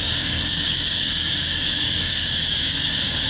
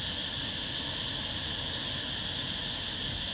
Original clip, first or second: second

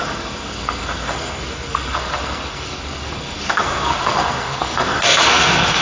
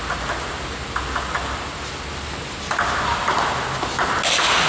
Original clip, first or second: second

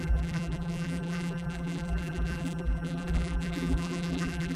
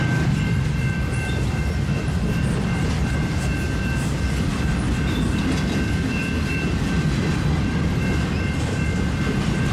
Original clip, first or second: second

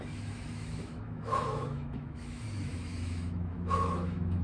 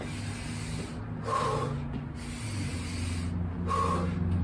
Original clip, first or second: second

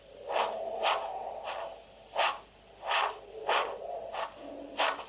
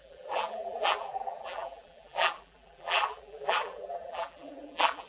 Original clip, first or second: first